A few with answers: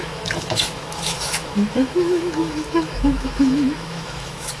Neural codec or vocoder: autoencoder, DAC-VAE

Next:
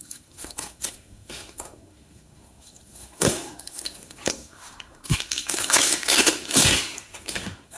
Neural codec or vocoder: codec, SNAC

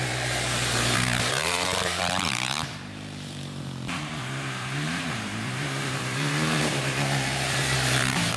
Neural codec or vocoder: vocoder, BigVGAN v2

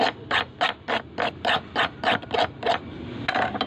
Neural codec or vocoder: none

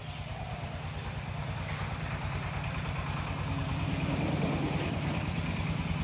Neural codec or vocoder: none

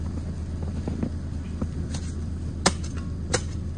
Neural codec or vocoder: none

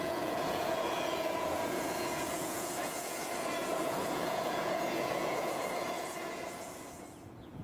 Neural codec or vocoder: vocoder, Vocos